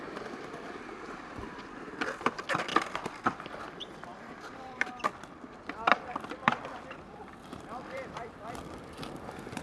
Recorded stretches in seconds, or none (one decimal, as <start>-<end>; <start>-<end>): none

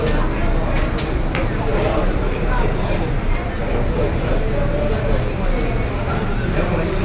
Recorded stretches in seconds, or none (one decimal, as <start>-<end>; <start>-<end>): 0.0-1.7; 3.2-7.0

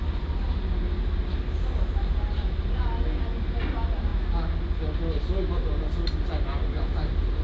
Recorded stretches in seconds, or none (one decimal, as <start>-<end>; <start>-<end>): 0.0-7.4

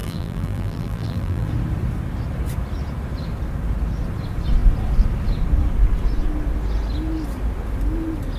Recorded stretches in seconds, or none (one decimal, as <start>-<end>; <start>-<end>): 1.5-8.4